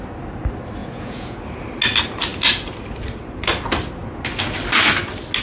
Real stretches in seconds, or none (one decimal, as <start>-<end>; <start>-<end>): 0.0-0.8; 1.4-5.4